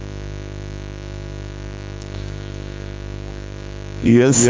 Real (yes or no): no